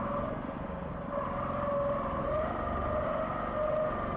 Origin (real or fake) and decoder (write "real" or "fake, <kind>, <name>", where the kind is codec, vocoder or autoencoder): real